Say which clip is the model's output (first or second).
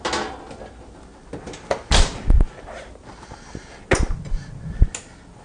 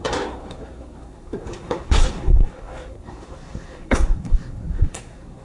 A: second